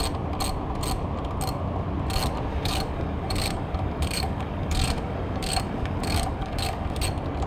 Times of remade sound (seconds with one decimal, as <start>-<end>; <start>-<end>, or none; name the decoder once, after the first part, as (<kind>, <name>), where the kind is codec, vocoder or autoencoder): 2.5-7.0 (codec, DAC)